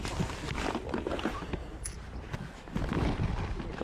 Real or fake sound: real